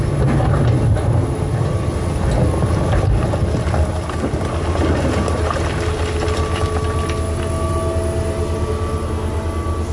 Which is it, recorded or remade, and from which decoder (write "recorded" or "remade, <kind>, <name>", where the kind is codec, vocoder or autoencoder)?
recorded